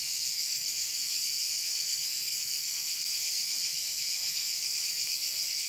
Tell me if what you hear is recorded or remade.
remade